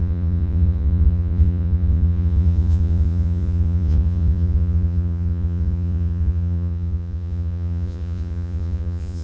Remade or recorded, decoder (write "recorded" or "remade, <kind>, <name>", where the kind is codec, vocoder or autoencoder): remade, vocoder, Vocos